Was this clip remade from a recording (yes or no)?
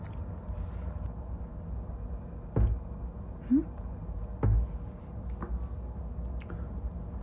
no